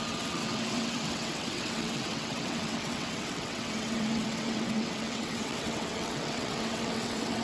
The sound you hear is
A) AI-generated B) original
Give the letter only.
A